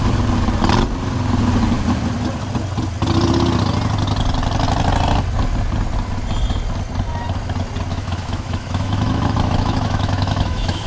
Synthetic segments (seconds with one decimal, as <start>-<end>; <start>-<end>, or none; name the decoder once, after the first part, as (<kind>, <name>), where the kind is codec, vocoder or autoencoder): 7.9-10.9 (autoencoder, DAC-VAE)